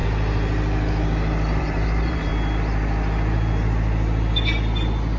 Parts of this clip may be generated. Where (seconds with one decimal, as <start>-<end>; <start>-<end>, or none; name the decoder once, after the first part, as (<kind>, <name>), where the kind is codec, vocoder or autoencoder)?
1.6-2.3 (vocoder, BigVGAN v2)